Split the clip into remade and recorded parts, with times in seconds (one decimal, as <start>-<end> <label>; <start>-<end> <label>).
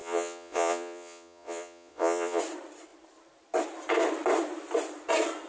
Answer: 0.0-2.4 remade; 2.4-5.5 recorded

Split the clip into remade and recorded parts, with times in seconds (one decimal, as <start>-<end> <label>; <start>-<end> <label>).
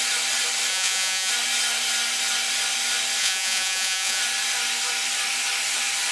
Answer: 0.0-0.7 recorded; 0.7-1.3 remade; 1.3-3.2 recorded; 3.2-4.2 remade; 4.2-6.1 recorded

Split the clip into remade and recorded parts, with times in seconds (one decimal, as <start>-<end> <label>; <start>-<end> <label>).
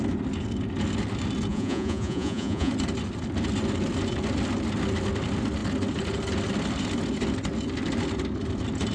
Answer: 0.0-1.5 recorded; 1.5-2.7 remade; 2.7-8.9 recorded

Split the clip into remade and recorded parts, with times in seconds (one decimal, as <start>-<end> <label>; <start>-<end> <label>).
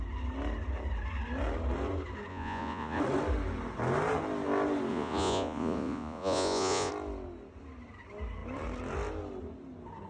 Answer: 0.0-2.3 recorded; 2.3-3.0 remade; 3.0-4.9 recorded; 4.9-6.9 remade; 6.9-10.1 recorded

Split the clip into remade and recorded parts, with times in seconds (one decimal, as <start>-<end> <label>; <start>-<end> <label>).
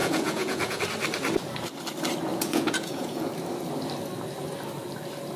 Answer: 0.0-0.8 remade; 0.8-2.3 recorded; 2.3-3.3 remade; 3.3-5.4 recorded